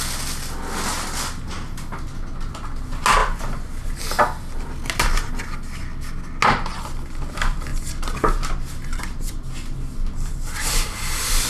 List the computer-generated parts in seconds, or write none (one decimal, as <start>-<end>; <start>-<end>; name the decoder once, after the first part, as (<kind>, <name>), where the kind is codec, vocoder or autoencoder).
none